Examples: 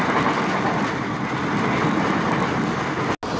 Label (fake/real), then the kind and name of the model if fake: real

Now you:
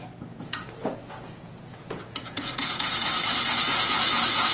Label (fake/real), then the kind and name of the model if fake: fake, vocoder, Vocos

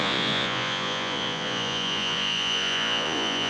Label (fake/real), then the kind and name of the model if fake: fake, vocoder, Vocos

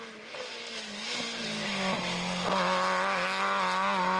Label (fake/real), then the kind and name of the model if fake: real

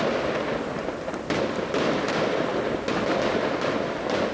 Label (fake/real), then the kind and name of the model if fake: real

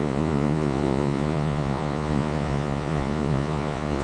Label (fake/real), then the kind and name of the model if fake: fake, vocoder, Vocos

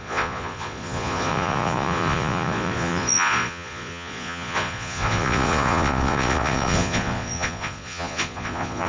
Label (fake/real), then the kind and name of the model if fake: fake, vocoder, Vocos